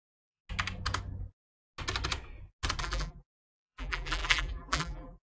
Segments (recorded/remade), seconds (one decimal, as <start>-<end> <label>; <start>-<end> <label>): 0.0-0.4 remade; 0.4-2.8 recorded; 2.8-5.2 remade